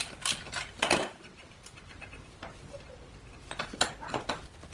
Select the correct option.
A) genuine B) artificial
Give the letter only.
A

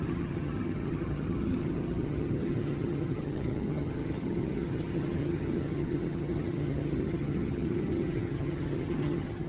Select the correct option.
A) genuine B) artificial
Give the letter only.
B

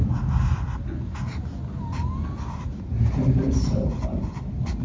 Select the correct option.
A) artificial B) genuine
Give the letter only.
B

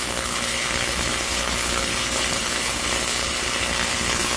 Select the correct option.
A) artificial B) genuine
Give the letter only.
A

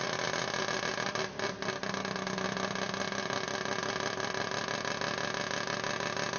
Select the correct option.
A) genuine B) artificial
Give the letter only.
A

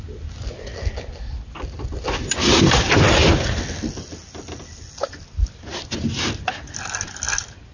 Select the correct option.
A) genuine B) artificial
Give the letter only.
A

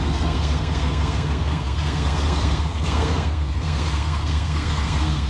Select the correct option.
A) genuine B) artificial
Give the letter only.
B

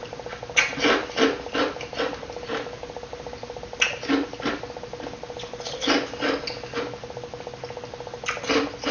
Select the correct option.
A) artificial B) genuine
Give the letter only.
B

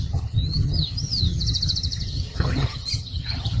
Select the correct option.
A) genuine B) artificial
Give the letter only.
B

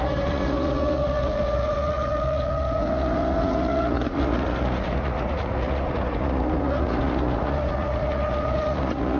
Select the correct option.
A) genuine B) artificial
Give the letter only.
B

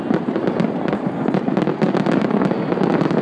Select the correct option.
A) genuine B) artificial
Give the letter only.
A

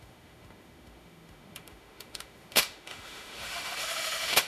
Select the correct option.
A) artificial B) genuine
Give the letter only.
A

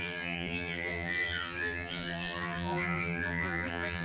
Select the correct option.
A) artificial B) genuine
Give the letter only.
A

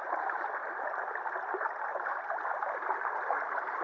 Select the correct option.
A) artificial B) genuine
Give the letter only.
B